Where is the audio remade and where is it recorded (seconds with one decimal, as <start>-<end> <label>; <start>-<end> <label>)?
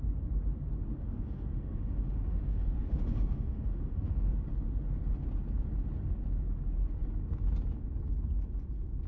0.0-0.9 recorded; 0.9-4.3 remade; 4.3-9.1 recorded